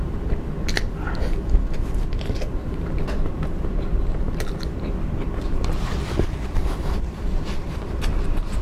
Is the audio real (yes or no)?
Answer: no